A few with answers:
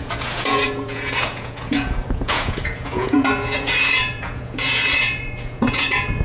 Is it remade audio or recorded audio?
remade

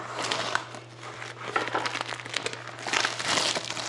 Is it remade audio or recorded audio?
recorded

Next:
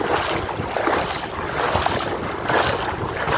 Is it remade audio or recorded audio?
recorded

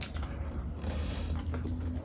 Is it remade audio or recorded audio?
recorded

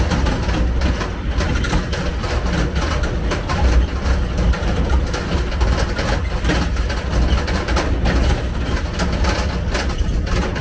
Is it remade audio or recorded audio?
recorded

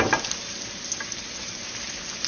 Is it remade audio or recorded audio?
recorded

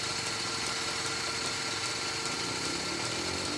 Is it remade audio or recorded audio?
recorded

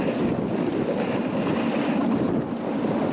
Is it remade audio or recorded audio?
recorded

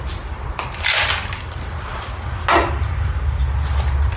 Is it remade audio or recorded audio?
recorded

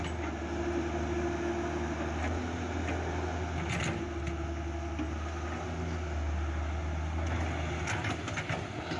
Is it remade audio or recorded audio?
recorded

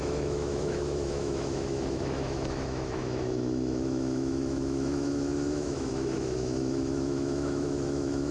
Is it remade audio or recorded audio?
remade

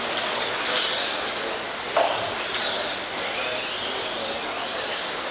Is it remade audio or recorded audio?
recorded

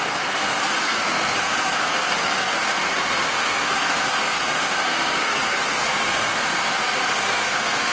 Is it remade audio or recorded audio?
remade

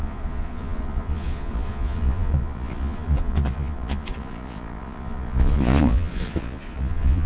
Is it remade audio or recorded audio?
remade